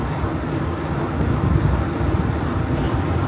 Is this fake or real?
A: real